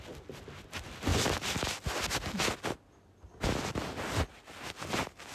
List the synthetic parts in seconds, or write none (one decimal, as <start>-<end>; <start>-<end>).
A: none